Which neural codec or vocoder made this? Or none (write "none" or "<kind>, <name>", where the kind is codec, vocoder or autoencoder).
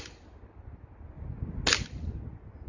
none